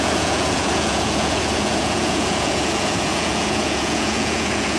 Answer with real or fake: fake